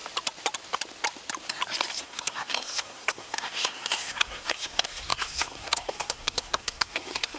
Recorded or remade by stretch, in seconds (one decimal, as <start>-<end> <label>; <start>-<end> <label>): 0.0-2.0 recorded; 2.0-7.4 remade